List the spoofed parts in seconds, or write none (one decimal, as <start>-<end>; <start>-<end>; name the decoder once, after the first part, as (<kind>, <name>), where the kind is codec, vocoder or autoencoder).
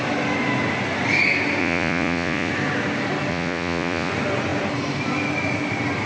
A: 1.6-2.5 (vocoder, Vocos); 3.3-4.1